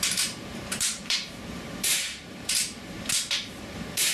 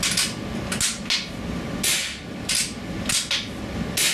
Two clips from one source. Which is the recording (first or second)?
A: second